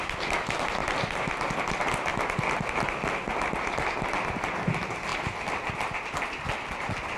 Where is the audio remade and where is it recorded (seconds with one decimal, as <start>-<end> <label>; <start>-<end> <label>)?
0.0-7.2 recorded